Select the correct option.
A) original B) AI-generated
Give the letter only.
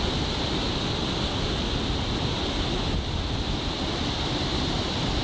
A